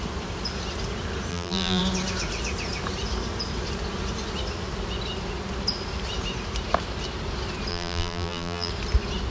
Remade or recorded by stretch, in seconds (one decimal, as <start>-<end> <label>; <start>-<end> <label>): 0.0-1.3 recorded; 1.3-1.8 remade; 1.8-7.7 recorded; 7.7-8.7 remade; 8.7-9.3 recorded